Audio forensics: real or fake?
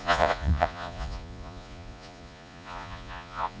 fake